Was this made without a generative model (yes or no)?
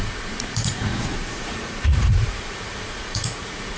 no